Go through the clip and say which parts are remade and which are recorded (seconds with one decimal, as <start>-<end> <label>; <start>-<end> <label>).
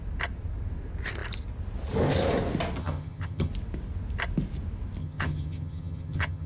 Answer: 0.0-2.8 recorded; 2.8-3.5 remade; 3.5-5.0 recorded; 5.0-6.5 remade